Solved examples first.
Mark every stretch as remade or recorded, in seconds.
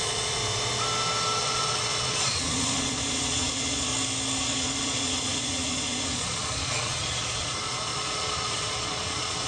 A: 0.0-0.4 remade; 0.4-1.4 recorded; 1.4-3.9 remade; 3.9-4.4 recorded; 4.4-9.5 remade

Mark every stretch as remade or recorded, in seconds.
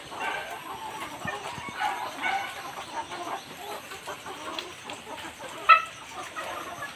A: 0.0-4.5 recorded; 4.5-5.4 remade; 5.4-7.0 recorded